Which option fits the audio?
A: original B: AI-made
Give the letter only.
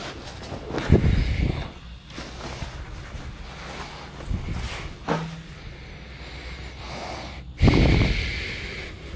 A